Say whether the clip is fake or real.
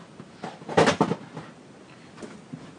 real